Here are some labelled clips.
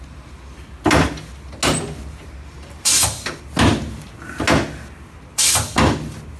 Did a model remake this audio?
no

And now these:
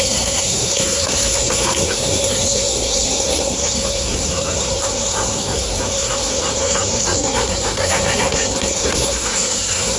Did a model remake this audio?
yes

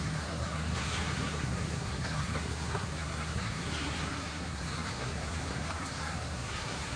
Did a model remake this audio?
yes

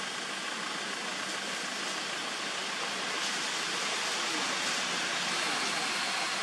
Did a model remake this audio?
no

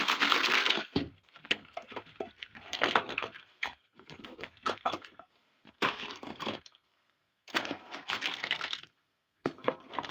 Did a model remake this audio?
yes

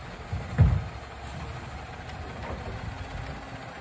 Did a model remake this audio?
no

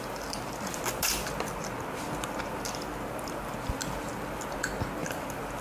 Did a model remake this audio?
no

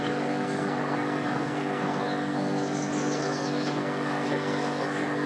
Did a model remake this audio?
yes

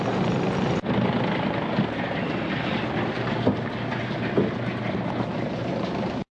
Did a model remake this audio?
no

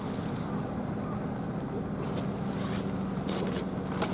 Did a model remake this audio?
no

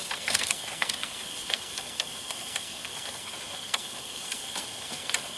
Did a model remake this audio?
yes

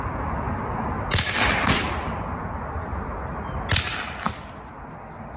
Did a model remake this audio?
no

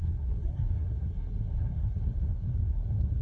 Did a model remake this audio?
yes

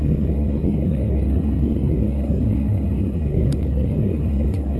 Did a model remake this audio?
yes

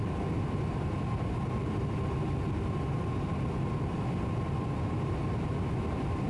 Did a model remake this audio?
no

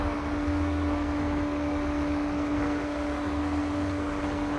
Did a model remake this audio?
yes